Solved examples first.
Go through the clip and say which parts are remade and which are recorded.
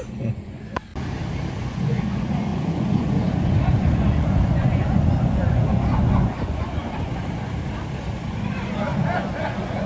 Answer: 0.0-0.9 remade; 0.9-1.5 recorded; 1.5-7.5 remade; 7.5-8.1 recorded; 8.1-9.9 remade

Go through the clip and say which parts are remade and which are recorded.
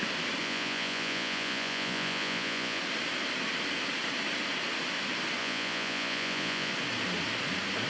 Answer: 0.0-0.4 recorded; 0.4-2.8 remade; 2.8-5.4 recorded; 5.4-6.7 remade; 6.7-7.9 recorded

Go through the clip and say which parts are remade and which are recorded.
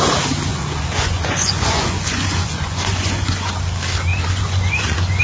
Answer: 0.0-0.5 recorded; 0.5-3.5 remade; 3.5-4.1 recorded; 4.1-5.2 remade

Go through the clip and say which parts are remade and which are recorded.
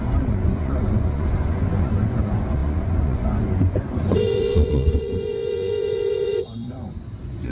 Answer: 0.0-7.5 remade